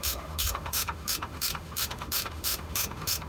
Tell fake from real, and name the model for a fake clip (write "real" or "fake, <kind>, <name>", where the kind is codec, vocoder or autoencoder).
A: fake, autoencoder, DAC-VAE